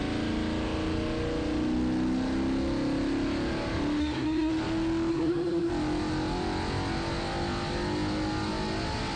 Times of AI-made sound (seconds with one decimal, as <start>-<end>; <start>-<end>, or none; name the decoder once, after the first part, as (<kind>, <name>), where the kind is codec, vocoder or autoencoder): 4.0-4.5 (codec, SNAC); 5.1-5.7